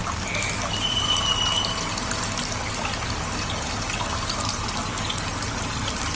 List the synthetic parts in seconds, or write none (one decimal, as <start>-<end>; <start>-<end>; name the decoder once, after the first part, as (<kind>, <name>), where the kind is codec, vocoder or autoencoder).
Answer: none